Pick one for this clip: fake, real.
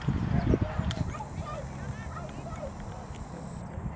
fake